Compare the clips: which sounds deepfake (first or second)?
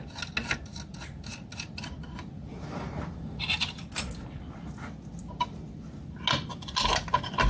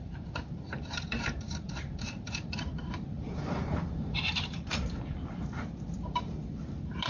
second